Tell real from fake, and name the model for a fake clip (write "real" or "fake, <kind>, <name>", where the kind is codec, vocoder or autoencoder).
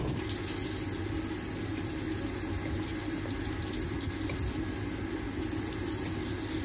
real